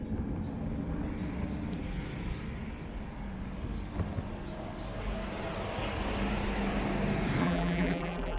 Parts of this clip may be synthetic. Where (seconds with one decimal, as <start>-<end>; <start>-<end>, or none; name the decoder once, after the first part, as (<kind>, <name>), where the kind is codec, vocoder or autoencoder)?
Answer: 7.4-8.4 (vocoder, BigVGAN v2)